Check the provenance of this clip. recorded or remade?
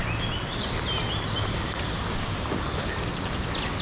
recorded